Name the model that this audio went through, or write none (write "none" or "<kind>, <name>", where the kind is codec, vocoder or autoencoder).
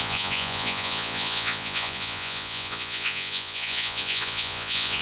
vocoder, Vocos